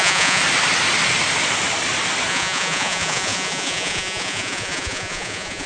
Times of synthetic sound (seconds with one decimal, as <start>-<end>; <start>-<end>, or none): 0.0-0.4; 2.3-5.7